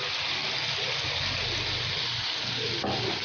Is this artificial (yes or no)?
no